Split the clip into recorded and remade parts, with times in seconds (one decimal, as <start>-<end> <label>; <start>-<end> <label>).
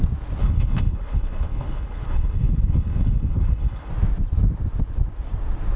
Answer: 0.0-0.4 recorded; 0.4-3.9 remade; 3.9-5.8 recorded